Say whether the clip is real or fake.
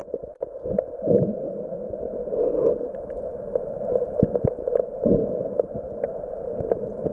real